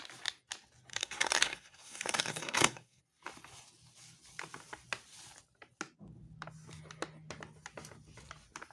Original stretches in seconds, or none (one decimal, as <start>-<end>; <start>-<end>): 0.0-0.9; 3.0-8.7